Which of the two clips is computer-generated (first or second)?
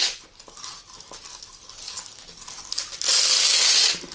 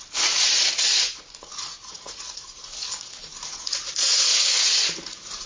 second